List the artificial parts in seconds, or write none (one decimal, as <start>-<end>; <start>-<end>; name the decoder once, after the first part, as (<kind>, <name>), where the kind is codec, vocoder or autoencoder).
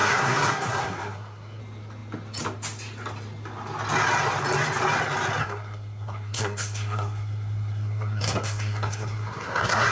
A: 0.0-1.6 (codec, SNAC); 5.4-9.9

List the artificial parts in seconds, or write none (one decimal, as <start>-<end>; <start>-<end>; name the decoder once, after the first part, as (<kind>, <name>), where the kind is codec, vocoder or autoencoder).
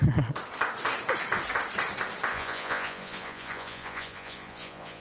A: 2.3-5.0 (vocoder, Vocos)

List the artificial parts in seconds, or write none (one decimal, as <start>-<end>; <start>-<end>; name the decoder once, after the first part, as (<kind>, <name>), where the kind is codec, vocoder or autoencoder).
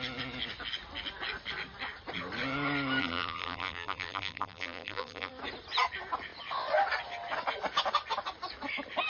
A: 3.0-5.3 (vocoder, BigVGAN v2)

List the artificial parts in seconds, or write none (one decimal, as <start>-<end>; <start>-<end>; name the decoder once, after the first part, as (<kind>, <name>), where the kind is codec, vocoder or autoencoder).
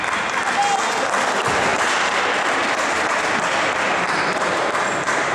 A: 1.7-5.3 (vocoder, BigVGAN v2)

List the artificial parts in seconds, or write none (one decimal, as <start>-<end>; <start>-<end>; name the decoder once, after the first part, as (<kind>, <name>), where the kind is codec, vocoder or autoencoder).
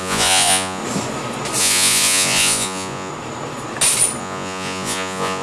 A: 0.0-0.8 (vocoder, Vocos); 1.6-3.1; 4.2-5.4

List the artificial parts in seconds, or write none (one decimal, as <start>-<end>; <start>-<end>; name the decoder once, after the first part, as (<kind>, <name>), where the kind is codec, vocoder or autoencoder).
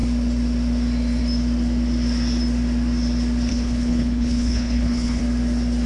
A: 3.5-5.2 (codec, HILCodec)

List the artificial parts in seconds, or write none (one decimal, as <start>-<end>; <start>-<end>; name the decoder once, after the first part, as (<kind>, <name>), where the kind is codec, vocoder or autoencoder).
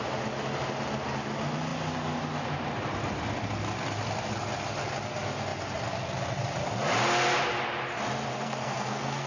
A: 8.3-9.3 (codec, SNAC)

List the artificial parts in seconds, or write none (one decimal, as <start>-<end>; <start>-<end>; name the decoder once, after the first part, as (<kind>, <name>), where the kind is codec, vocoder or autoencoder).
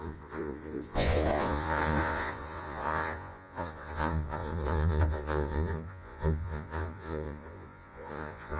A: 0.0-8.6 (vocoder, Vocos)